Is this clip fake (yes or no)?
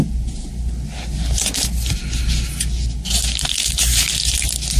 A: no